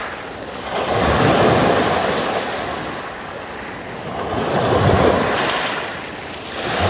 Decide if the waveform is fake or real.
real